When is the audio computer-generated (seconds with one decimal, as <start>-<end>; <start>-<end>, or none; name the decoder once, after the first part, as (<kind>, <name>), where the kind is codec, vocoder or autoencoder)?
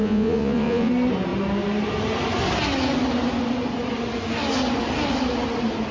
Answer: 0.0-0.9 (vocoder, Vocos)